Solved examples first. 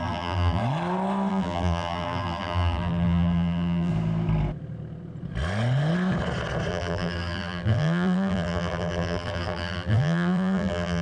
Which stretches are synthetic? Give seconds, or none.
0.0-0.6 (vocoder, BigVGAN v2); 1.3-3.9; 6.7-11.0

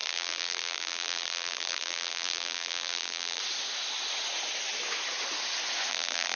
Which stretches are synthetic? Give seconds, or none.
0.0-3.4 (vocoder, BigVGAN v2); 5.9-6.4

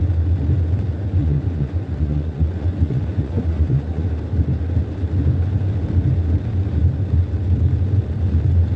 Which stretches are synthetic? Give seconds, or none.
1.2-4.1 (vocoder, Vocos)

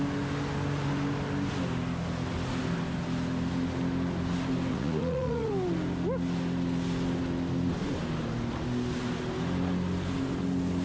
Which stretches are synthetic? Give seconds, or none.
4.7-5.5 (vocoder, Vocos)

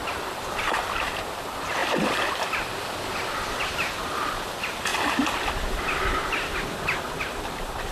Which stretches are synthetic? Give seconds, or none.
1.8-3.6 (vocoder, BigVGAN v2); 4.9-7.9

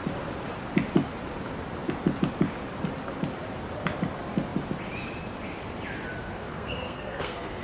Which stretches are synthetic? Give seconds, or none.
6.2-7.6 (codec, SNAC)

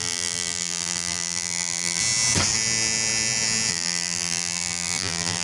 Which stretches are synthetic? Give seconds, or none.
0.0-2.0 (vocoder, BigVGAN v2); 3.7-5.4